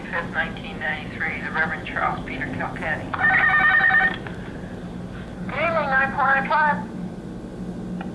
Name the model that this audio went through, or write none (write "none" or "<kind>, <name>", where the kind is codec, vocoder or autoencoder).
none